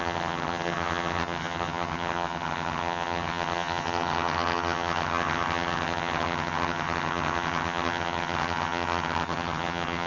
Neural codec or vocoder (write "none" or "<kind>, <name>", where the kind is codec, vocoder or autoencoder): vocoder, HiFi-GAN